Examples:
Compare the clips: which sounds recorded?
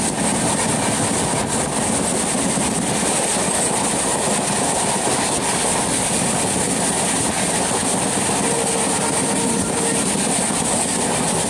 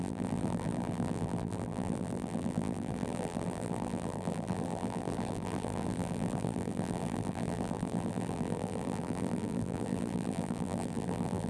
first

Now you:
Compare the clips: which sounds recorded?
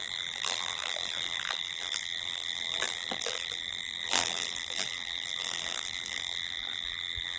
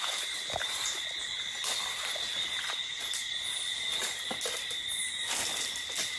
second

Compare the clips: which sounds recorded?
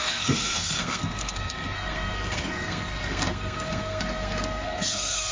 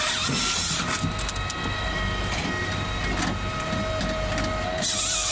second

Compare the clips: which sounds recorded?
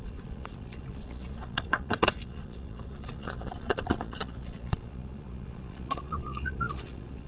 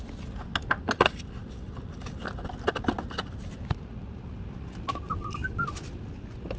second